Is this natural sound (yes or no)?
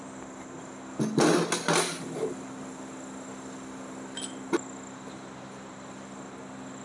yes